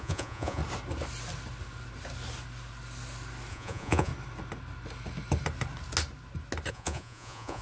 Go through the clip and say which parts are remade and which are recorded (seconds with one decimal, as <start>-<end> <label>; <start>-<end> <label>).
0.0-0.6 remade; 0.6-3.5 recorded; 3.5-4.1 remade; 4.1-6.7 recorded; 6.7-7.6 remade